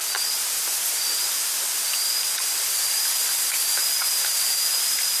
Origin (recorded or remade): recorded